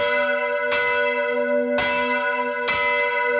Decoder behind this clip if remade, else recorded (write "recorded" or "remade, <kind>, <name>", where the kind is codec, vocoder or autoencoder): recorded